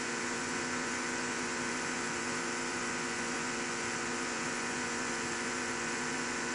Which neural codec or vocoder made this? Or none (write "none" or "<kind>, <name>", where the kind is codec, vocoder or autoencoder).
vocoder, Vocos